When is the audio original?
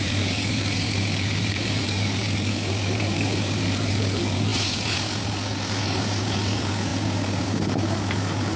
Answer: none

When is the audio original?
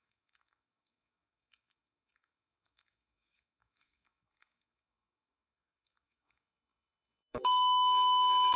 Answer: none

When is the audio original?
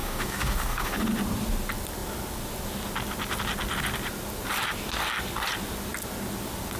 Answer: 1.0-6.8